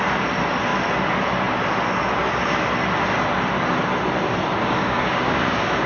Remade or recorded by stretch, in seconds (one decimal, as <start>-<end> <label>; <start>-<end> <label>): 0.0-4.6 recorded; 4.6-5.9 remade

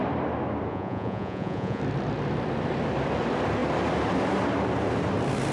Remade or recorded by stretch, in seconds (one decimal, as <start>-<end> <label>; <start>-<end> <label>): 0.0-0.7 recorded; 0.7-1.8 remade; 1.8-5.5 recorded